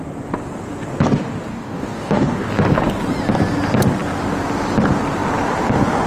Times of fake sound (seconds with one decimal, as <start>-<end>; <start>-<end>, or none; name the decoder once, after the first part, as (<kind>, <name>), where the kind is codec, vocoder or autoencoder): 1.5-2.5 (codec, DAC)